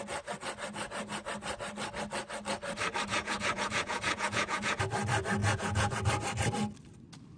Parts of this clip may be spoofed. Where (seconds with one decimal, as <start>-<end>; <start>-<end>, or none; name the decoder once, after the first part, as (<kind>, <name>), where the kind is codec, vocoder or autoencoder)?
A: 3.1-4.8 (vocoder, Vocos); 5.4-6.0